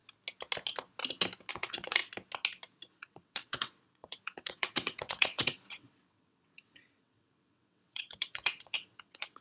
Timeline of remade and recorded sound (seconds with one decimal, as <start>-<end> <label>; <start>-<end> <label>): 0.0-1.5 recorded; 1.5-2.0 remade; 2.0-2.9 recorded; 2.9-9.4 remade